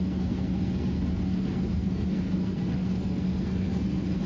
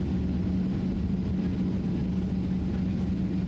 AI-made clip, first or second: first